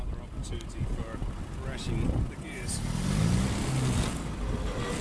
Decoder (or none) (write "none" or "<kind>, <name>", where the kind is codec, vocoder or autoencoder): none